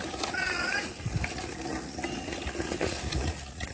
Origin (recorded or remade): remade